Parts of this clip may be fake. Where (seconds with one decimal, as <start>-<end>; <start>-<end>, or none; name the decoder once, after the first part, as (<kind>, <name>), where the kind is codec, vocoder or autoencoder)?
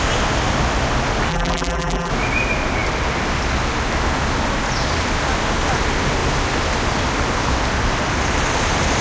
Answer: 1.3-2.1 (vocoder, BigVGAN v2)